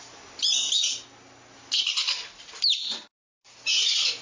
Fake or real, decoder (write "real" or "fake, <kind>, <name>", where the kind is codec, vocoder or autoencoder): real